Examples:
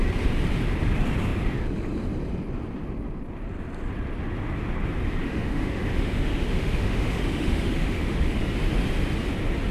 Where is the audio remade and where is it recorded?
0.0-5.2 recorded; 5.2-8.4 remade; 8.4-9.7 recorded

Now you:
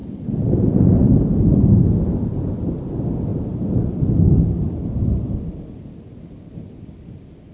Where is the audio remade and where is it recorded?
0.0-7.5 recorded

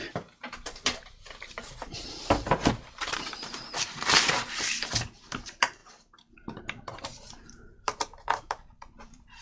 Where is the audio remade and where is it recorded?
0.0-5.8 remade; 5.8-6.6 recorded; 6.6-9.4 remade

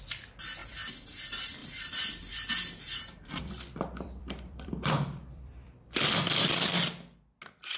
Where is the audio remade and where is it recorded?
0.0-1.6 recorded; 1.6-6.3 remade; 6.3-7.8 recorded

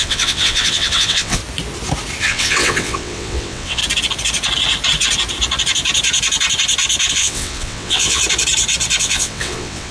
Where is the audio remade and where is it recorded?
0.0-1.4 remade; 1.4-2.2 recorded; 2.2-3.8 remade; 3.8-7.1 recorded; 7.1-8.2 remade; 8.2-9.0 recorded; 9.0-9.9 remade

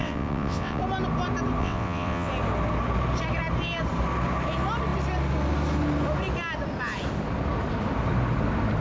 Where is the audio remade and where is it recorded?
0.0-0.8 remade; 0.8-1.6 recorded; 1.6-2.3 remade; 2.3-8.8 recorded